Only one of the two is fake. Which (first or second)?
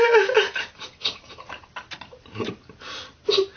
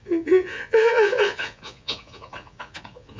second